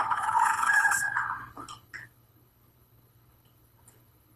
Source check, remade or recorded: remade